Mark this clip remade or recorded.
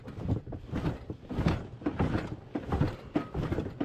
recorded